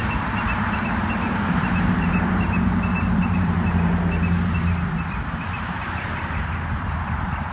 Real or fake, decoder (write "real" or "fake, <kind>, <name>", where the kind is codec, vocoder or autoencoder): fake, vocoder, BigVGAN v2